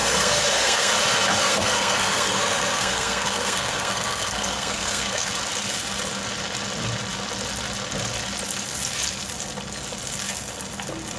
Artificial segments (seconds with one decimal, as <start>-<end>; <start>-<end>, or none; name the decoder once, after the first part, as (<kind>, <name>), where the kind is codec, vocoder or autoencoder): 0.0-0.9 (codec, SNAC); 1.4-5.3